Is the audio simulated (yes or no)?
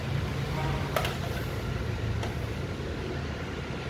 no